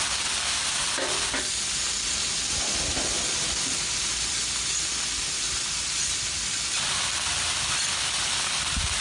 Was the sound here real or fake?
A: real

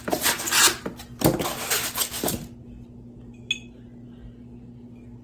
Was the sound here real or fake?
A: real